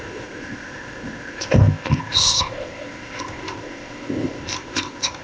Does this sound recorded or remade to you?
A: remade